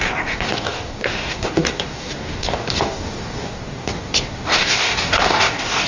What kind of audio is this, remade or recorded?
remade